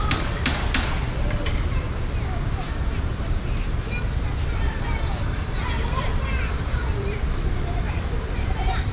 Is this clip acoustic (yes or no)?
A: no